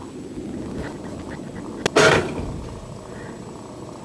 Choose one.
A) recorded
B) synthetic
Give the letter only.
A